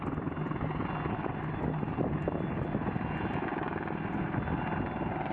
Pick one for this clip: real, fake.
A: real